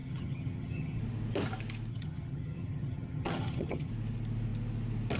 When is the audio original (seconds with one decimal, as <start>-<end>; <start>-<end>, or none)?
1.0-1.9; 3.9-5.2